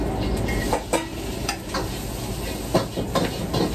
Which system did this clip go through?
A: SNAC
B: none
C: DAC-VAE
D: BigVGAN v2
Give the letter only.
B